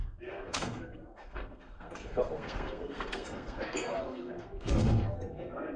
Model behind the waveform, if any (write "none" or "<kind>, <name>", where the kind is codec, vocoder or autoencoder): codec, SNAC